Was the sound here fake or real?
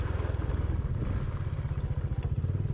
real